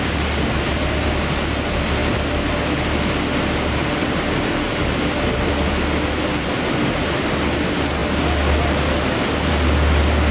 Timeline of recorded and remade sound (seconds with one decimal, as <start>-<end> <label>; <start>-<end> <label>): 0.0-10.3 recorded